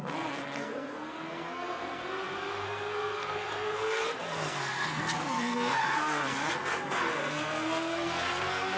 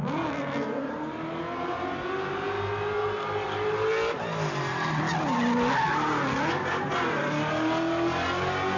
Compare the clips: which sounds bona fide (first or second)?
second